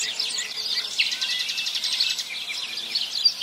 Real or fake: real